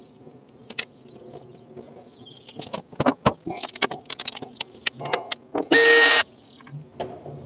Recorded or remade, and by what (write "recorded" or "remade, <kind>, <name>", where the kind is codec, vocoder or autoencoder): recorded